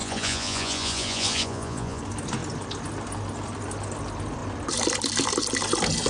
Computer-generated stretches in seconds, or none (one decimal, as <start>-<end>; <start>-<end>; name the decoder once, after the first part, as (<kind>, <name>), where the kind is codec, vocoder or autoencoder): 0.0-2.0 (vocoder, Vocos)